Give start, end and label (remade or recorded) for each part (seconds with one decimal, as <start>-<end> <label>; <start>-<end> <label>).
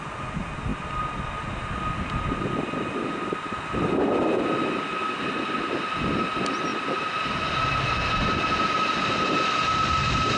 0.0-10.4 recorded